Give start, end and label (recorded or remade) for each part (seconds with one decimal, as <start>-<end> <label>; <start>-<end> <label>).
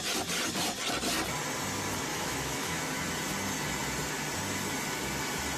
0.0-2.1 recorded; 2.1-2.8 remade; 2.8-5.6 recorded